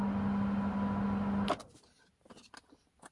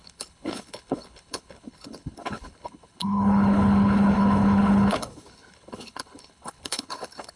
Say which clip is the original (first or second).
first